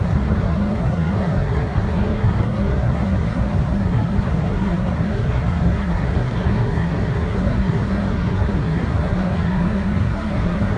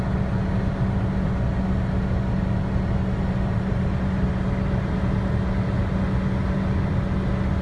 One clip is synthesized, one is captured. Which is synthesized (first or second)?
first